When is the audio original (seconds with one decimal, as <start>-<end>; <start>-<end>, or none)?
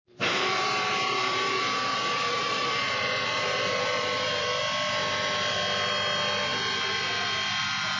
4.6-8.0